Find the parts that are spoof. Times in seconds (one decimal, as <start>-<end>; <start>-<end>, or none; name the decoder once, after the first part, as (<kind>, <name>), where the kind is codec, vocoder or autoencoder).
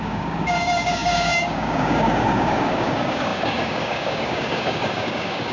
0.0-5.5 (codec, DAC)